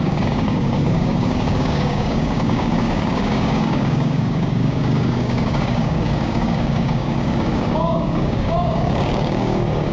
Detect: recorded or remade remade